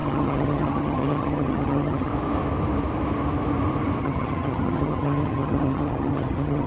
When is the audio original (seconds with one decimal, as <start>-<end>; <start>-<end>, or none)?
2.1-4.0